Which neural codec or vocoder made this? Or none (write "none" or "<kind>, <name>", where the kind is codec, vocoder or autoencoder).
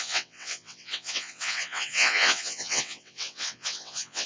vocoder, WaveNeXt